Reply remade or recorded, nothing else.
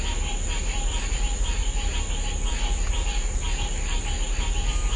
recorded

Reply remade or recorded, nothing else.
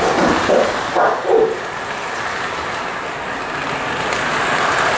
recorded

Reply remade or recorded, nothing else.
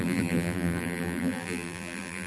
remade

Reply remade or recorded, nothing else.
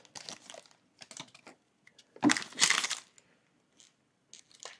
recorded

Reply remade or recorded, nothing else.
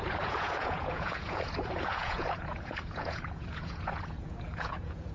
remade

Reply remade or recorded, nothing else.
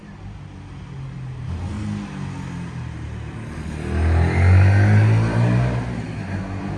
recorded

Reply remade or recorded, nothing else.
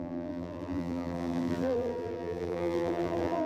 remade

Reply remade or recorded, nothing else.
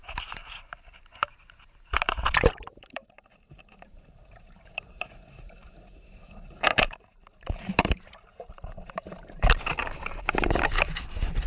remade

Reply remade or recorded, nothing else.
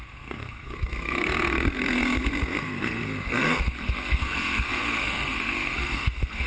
remade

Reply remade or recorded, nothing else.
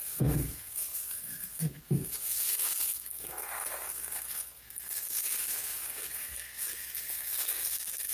remade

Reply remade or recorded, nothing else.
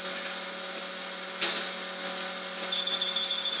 recorded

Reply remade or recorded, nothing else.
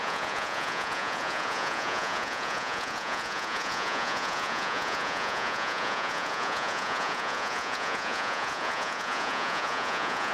remade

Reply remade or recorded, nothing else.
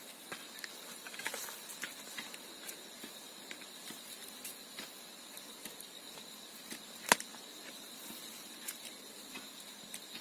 recorded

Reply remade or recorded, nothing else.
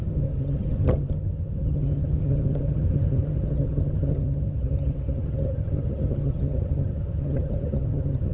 remade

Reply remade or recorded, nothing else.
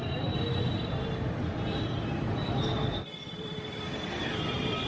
remade